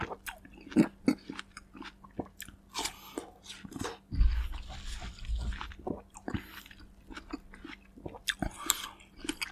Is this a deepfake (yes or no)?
no